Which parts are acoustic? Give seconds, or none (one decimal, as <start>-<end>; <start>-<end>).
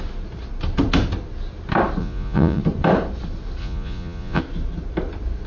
0.0-2.0; 2.6-3.6; 4.4-5.5